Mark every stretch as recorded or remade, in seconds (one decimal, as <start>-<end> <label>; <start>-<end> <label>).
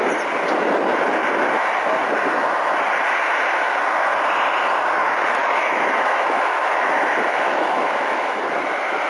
0.0-5.4 recorded; 5.4-8.4 remade; 8.4-9.1 recorded